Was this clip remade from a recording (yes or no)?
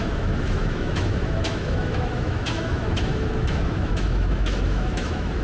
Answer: yes